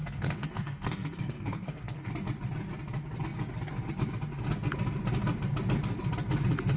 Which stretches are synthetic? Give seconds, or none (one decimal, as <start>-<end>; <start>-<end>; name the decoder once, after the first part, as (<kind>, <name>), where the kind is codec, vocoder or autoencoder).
0.0-2.1 (codec, SNAC)